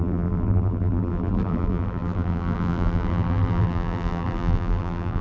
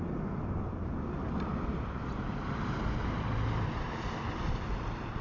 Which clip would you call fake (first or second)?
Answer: first